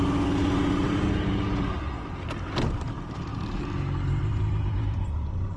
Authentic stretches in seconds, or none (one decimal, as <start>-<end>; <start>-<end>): 0.0-5.6